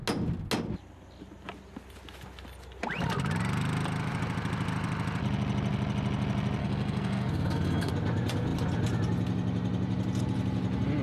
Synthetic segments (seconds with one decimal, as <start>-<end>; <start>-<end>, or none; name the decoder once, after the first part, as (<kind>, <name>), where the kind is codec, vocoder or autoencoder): 6.6-7.9 (codec, SNAC)